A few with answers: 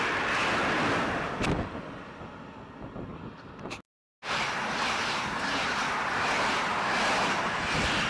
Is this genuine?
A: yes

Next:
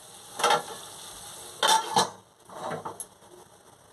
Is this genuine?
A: yes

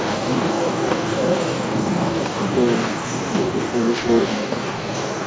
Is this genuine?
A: no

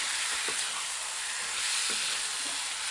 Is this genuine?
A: yes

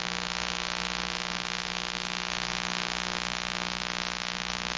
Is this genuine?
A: no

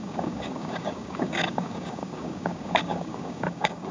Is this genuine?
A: no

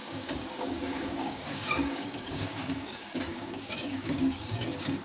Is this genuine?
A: no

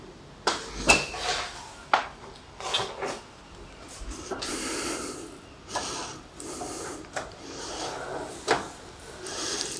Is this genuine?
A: yes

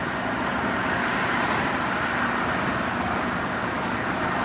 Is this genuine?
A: yes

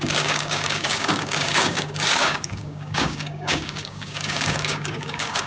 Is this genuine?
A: no